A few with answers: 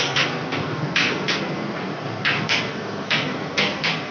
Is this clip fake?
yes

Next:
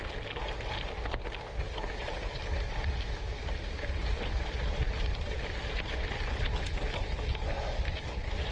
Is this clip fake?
no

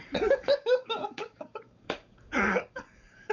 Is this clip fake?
yes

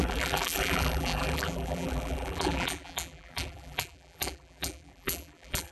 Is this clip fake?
yes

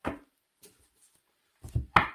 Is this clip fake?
yes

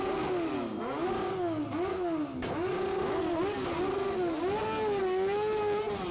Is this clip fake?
no